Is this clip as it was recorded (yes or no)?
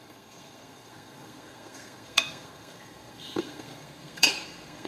no